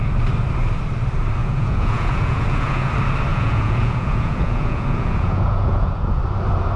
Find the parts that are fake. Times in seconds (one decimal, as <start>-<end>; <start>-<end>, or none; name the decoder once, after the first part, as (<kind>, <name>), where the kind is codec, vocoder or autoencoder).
1.4-2.9 (vocoder, Vocos); 3.3-6.2